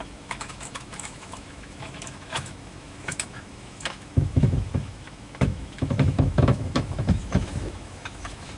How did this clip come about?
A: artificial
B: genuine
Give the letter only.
A